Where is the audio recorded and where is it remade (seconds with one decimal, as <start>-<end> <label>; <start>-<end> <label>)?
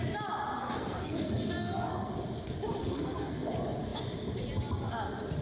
0.0-0.6 recorded; 0.6-2.1 remade; 2.1-2.8 recorded; 2.8-3.5 remade; 3.5-5.4 recorded